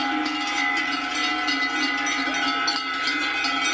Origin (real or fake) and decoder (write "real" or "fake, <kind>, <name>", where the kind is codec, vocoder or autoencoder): real